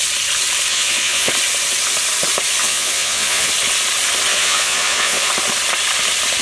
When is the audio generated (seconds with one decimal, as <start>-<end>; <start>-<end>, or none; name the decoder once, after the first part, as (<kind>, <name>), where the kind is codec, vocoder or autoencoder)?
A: 0.7-1.3 (vocoder, Vocos); 2.6-3.5; 4.3-5.3